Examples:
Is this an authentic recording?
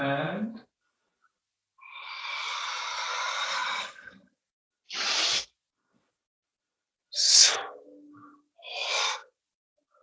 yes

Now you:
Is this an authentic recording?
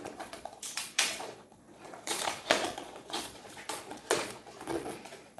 no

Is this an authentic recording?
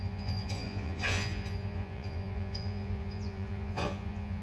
no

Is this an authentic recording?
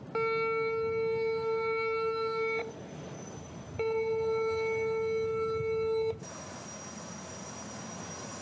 yes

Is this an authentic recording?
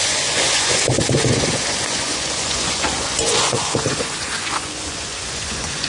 no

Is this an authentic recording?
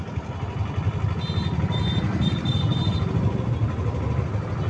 yes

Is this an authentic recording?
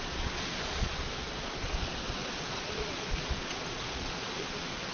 no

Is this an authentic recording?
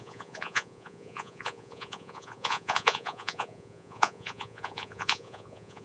no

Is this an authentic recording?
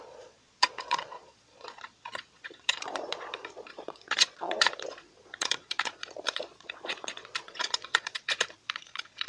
no